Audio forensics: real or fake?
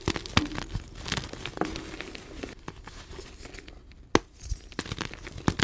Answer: real